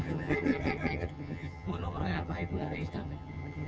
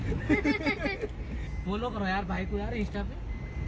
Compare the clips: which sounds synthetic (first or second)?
first